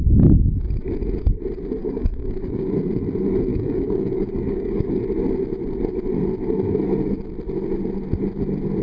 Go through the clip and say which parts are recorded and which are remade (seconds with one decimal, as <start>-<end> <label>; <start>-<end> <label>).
0.0-1.8 recorded; 1.8-2.6 remade; 2.6-3.5 recorded; 3.5-5.0 remade; 5.0-8.8 recorded